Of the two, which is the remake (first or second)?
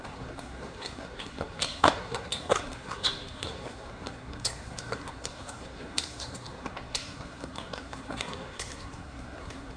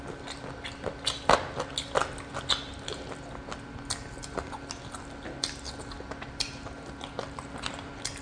first